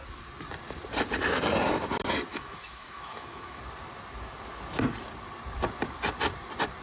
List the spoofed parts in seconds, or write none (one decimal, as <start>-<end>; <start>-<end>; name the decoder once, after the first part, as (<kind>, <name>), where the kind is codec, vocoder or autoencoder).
2.3-3.6 (autoencoder, DAC-VAE)